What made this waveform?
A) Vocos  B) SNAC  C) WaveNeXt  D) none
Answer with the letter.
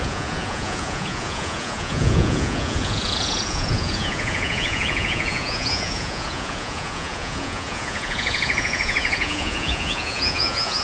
A